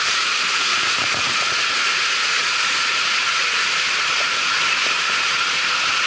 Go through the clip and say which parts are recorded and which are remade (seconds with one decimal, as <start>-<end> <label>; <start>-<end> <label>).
0.0-6.1 remade